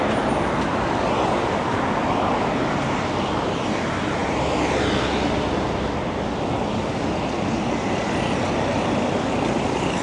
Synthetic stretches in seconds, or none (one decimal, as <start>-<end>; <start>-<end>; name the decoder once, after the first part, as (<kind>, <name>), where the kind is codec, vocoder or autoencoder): none